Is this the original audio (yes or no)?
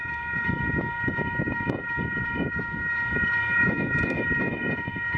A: no